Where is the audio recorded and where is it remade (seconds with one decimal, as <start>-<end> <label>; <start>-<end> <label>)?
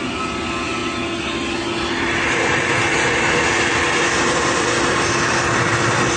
0.0-6.2 recorded